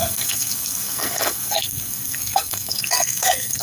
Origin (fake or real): fake